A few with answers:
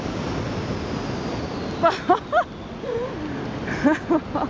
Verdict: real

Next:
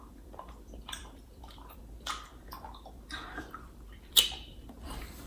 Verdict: fake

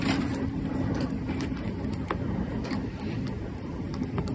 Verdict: fake